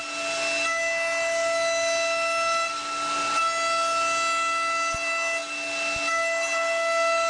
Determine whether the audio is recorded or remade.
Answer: recorded